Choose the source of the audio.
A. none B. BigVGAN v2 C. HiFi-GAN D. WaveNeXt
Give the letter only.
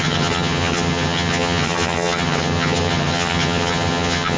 C